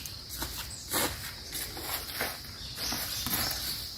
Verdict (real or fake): real